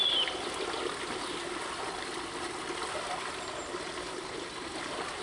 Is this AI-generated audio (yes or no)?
no